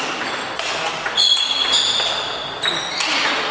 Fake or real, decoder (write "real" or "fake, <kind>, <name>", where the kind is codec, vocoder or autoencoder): real